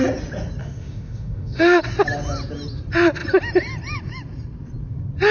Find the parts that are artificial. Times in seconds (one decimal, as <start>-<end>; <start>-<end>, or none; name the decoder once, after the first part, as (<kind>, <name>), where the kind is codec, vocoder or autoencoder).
0.6-1.8 (autoencoder, DAC-VAE)